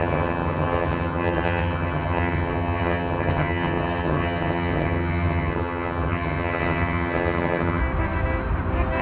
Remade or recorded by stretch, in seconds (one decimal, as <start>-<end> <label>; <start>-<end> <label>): 0.0-7.8 remade; 7.8-9.0 recorded